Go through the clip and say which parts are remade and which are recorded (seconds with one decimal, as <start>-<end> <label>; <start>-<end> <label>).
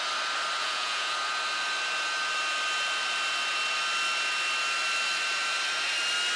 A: 0.0-0.6 recorded; 0.6-1.1 remade; 1.1-6.4 recorded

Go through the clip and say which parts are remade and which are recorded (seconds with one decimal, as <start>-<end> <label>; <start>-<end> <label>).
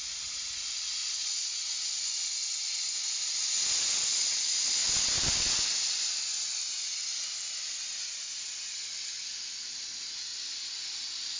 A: 0.0-1.0 recorded; 1.0-1.8 remade; 1.8-10.3 recorded; 10.3-10.8 remade; 10.8-11.4 recorded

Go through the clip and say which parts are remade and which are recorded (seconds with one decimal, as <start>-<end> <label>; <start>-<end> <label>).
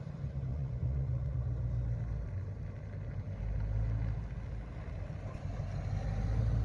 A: 0.0-0.5 recorded; 0.5-1.4 remade; 1.4-6.6 recorded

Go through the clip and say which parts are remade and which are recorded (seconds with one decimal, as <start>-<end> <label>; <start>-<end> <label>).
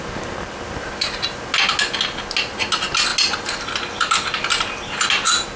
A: 0.0-5.6 recorded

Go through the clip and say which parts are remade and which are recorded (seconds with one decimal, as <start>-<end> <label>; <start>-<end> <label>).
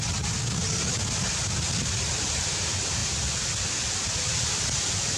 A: 0.0-5.2 recorded